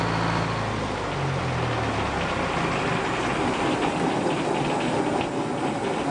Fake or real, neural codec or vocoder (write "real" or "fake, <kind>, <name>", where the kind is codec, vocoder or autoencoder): real